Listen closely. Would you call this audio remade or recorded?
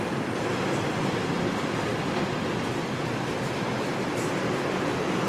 recorded